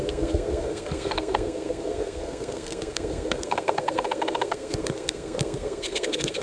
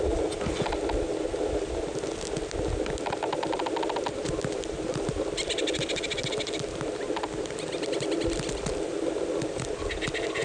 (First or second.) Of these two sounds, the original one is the second